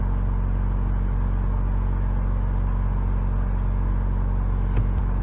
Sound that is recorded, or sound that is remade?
recorded